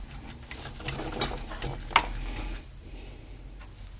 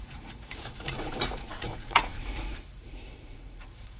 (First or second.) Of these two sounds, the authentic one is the first